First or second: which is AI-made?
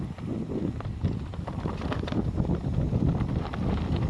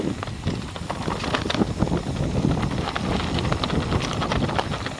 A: first